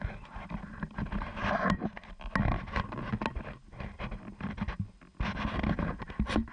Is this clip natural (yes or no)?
yes